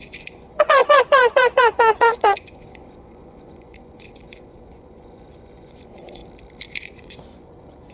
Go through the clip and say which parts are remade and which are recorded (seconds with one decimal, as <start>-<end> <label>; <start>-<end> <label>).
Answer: 0.0-6.2 remade; 6.2-6.8 recorded; 6.8-7.9 remade